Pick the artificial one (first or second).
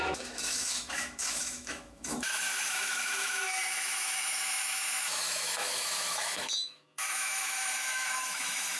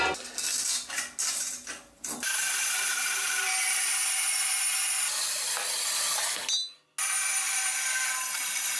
first